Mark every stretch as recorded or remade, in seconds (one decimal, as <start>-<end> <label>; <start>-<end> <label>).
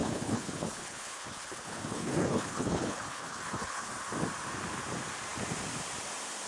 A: 0.0-3.9 remade; 3.9-6.5 recorded